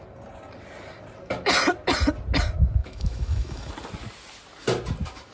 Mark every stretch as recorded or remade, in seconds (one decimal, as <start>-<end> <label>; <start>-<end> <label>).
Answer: 0.0-2.8 recorded; 2.8-3.7 remade; 3.7-5.3 recorded